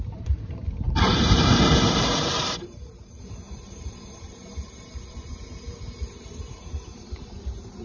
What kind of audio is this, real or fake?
fake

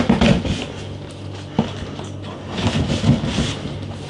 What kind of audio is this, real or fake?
real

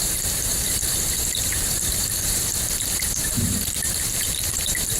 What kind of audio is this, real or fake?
fake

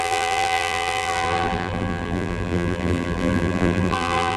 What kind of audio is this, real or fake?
fake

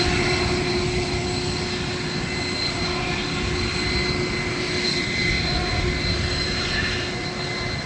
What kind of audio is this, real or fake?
real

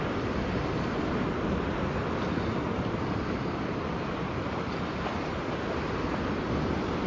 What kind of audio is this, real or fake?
fake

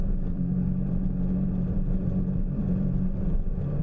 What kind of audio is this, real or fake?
fake